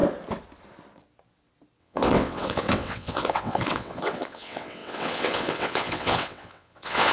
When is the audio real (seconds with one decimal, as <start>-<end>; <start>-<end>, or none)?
0.0-1.8